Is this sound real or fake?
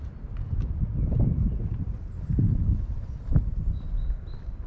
real